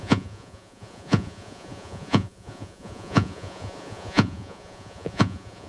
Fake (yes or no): yes